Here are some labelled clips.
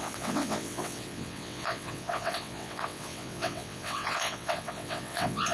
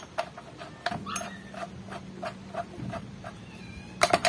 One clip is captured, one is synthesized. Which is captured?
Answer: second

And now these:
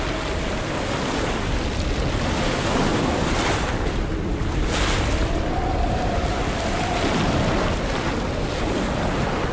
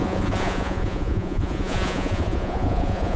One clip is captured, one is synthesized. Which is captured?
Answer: first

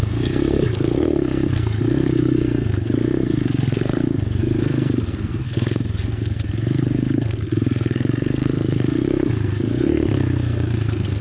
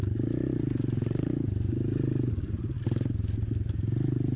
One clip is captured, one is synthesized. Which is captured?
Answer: second